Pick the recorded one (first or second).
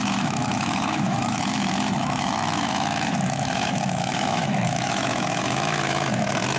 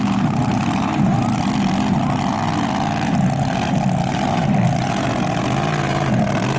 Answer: second